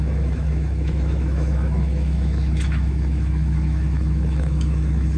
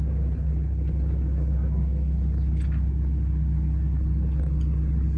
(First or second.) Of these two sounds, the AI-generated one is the first